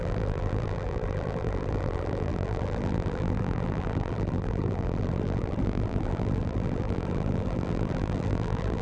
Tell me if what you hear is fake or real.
fake